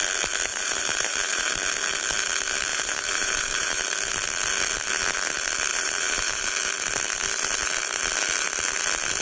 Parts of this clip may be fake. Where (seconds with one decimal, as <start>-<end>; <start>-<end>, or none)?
0.5-1.5; 2.7-3.8; 5.7-6.5